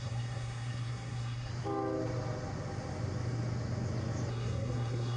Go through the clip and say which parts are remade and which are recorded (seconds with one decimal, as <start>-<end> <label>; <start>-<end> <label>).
0.0-1.5 remade; 1.5-4.3 recorded; 4.3-5.2 remade